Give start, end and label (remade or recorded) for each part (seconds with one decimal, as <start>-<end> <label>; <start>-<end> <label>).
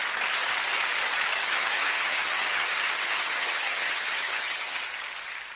0.0-1.4 recorded; 1.4-4.8 remade; 4.8-5.6 recorded